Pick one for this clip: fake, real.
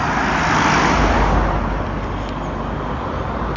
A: real